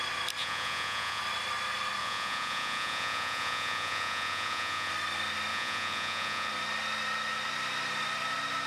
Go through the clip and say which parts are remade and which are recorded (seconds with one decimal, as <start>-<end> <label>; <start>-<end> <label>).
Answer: 0.0-0.4 recorded; 0.4-1.2 remade; 1.2-2.0 recorded; 2.0-4.9 remade; 4.9-5.5 recorded; 5.5-6.5 remade; 6.5-8.7 recorded